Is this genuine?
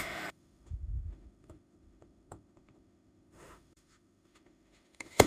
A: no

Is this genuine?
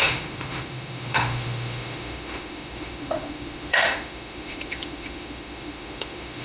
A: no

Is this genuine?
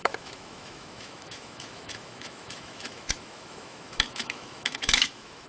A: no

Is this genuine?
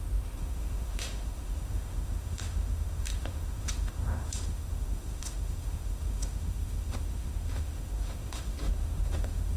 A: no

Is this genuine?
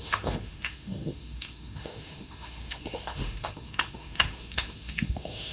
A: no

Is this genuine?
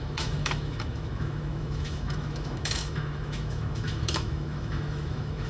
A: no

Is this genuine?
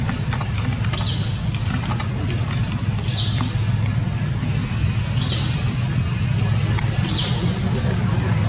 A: yes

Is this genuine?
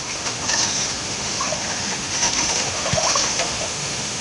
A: no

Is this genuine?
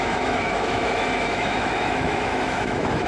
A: no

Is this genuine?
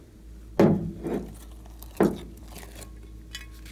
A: yes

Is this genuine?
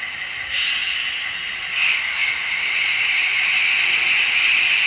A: yes